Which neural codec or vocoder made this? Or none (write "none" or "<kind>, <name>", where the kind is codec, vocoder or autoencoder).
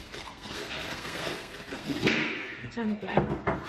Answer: codec, SNAC